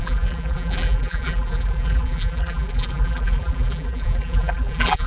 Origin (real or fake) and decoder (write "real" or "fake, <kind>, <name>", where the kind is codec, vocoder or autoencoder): fake, vocoder, BigVGAN v2